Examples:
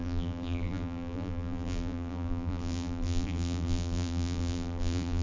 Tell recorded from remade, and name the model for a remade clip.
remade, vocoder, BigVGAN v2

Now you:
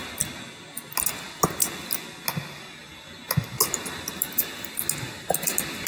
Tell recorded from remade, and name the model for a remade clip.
recorded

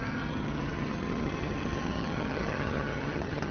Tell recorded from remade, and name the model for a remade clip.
remade, vocoder, HiFi-GAN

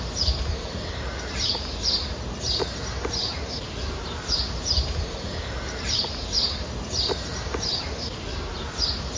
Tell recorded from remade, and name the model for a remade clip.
remade, vocoder, BigVGAN v2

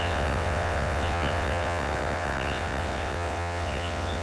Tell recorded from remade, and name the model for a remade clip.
remade, vocoder, WaveNeXt